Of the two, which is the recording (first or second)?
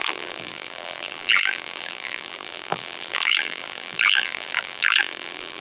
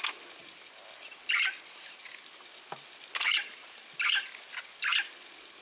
second